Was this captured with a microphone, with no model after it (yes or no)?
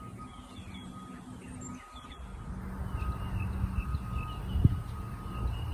yes